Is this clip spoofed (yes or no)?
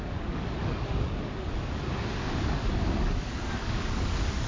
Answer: yes